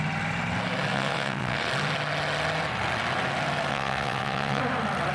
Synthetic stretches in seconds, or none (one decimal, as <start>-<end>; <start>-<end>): 0.9-1.7; 3.7-4.6

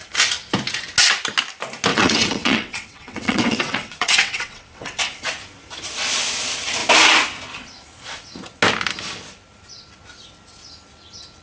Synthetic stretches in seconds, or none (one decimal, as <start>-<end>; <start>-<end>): 1.9-5.0

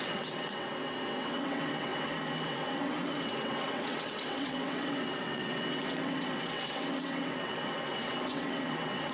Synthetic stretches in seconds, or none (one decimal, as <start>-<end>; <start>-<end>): 0.0-9.1

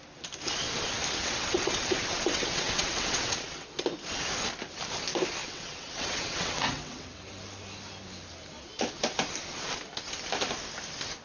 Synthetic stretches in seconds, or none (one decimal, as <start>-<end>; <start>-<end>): 1.2-3.7; 5.4-7.3

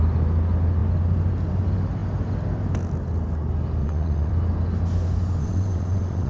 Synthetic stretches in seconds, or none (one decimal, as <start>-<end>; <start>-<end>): 3.8-4.3; 5.4-6.3

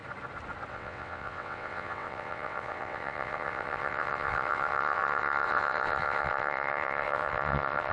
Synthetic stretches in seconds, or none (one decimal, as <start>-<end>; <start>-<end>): 0.7-7.9